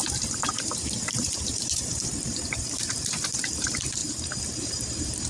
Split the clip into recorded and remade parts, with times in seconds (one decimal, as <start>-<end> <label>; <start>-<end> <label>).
0.0-5.3 remade